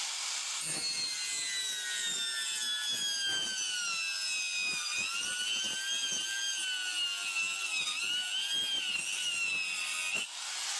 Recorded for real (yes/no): yes